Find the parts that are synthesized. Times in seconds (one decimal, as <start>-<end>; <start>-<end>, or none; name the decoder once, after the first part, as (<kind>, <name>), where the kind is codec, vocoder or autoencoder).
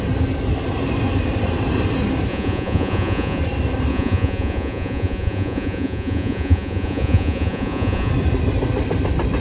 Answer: 2.3-3.4 (vocoder, Vocos); 3.9-8.1